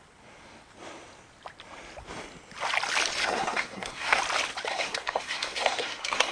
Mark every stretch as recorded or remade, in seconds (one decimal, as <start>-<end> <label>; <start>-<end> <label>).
0.0-3.2 recorded; 3.2-4.2 remade; 4.2-4.7 recorded; 4.7-6.3 remade